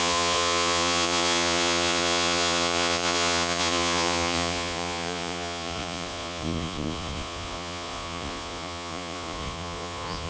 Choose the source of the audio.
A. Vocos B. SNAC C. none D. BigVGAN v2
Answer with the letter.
A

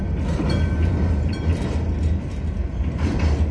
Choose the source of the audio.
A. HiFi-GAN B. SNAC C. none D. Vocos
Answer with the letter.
C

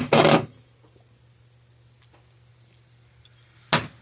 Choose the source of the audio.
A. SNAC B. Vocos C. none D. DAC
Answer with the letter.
C